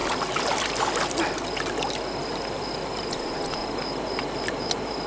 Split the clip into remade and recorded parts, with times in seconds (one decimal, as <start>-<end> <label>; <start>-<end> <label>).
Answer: 0.0-3.1 recorded; 3.1-3.6 remade; 3.6-5.1 recorded